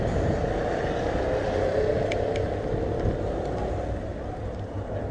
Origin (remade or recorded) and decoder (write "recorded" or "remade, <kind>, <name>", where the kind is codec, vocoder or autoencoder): recorded